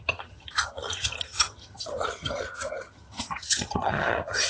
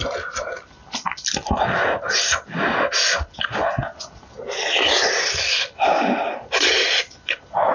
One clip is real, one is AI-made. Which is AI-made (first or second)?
first